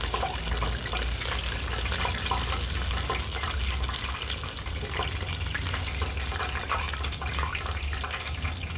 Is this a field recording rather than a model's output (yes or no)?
yes